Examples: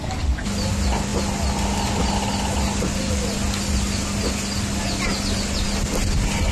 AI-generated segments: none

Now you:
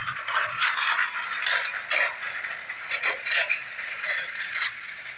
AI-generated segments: 2.3-5.2

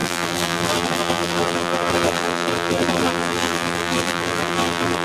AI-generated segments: 0.0-5.0

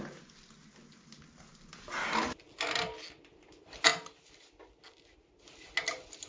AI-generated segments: none

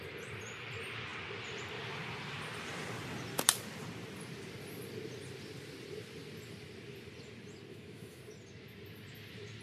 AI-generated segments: 7.7-8.2